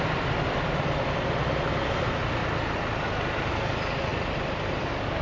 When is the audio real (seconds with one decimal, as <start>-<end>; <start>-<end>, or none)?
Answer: 2.4-3.5; 4.1-4.8